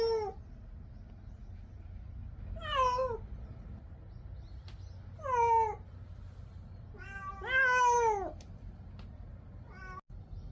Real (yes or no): yes